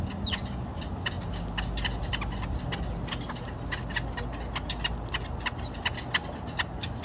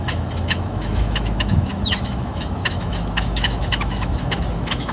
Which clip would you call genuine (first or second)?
first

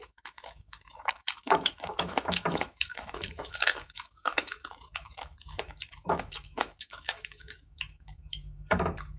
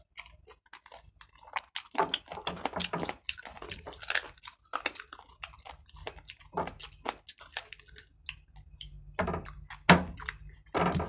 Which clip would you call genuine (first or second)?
second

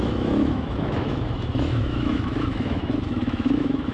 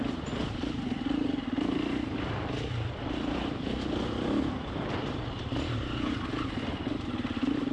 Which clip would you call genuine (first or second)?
second